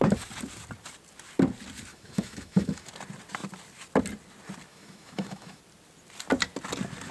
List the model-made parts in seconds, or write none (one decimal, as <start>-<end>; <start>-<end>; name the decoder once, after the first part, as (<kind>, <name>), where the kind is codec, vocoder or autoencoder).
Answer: 1.9-2.9 (autoencoder, DAC-VAE); 4.7-5.6